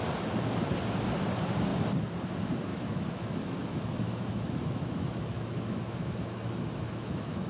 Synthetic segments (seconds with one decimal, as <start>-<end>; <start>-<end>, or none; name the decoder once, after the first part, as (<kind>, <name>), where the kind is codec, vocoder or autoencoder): 2.7-7.5 (autoencoder, DAC-VAE)